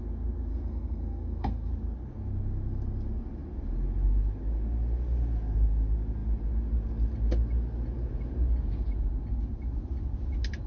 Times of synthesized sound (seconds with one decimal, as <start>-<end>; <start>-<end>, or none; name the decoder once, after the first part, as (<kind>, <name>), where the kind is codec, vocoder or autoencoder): 0.5-1.7 (codec, SNAC)